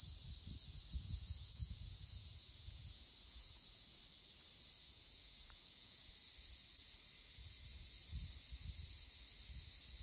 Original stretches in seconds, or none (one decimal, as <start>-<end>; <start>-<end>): 0.0-0.8; 4.0-4.8; 6.1-10.0